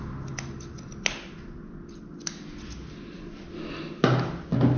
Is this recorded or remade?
recorded